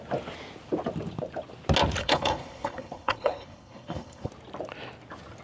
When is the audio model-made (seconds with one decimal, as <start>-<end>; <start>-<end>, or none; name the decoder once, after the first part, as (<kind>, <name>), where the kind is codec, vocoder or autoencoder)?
2.0-4.3 (codec, HILCodec)